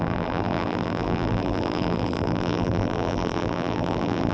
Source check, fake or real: fake